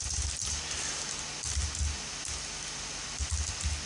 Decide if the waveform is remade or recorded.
recorded